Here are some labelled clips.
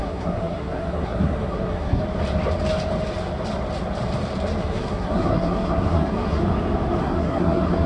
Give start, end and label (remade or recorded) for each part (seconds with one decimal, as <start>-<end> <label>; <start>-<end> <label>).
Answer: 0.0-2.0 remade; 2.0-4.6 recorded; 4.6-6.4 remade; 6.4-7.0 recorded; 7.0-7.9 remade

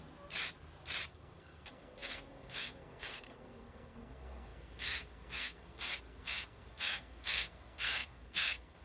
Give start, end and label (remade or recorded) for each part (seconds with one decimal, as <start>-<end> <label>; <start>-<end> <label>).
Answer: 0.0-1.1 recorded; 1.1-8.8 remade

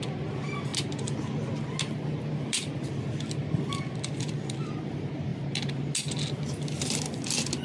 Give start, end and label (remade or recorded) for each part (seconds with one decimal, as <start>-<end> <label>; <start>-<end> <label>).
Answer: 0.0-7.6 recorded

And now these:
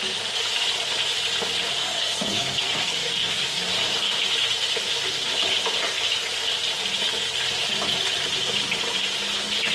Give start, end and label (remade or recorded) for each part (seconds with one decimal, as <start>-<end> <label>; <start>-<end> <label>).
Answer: 0.0-1.8 recorded; 1.8-3.7 remade; 3.7-9.7 recorded

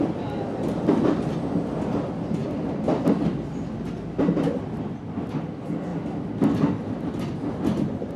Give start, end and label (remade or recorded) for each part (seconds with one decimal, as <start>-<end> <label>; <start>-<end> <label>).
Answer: 0.0-8.2 recorded

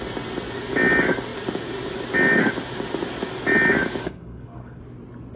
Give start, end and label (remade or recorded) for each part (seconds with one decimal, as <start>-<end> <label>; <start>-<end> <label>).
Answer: 0.0-4.0 recorded; 4.0-4.8 remade; 4.8-5.4 recorded